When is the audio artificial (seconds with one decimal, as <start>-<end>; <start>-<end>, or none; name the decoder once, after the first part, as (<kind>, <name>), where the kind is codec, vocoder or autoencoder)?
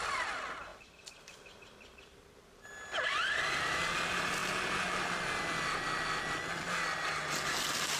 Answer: none